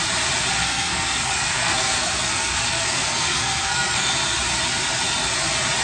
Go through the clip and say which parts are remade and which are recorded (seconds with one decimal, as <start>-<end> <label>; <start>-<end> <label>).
0.0-0.6 recorded; 0.6-4.1 remade; 4.1-5.8 recorded